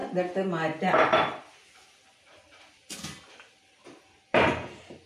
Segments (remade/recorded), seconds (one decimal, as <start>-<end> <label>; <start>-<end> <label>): 0.0-1.4 recorded; 1.4-5.1 remade